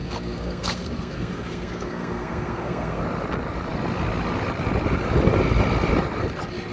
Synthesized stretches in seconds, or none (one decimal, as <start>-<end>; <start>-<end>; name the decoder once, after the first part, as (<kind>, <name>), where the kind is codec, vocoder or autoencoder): 0.0-3.0 (codec, SNAC)